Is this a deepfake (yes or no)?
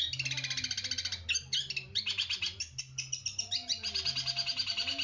no